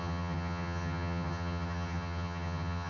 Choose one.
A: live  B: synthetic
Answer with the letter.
B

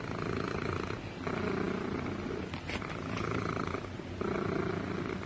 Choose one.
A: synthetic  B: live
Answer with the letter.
B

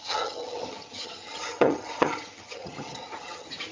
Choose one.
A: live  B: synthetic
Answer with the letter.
B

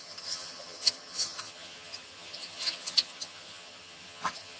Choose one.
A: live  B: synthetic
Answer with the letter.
B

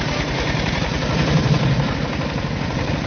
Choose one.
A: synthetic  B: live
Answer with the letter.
B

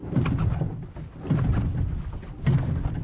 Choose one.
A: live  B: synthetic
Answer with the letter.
A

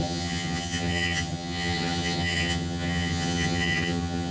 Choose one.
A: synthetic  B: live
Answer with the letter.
A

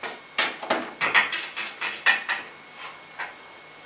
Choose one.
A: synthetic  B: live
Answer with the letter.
B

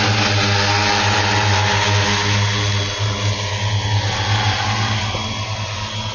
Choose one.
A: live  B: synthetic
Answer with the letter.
A